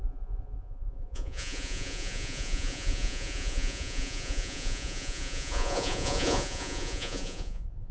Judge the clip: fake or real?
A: fake